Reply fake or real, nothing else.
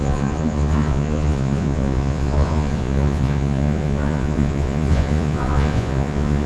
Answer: fake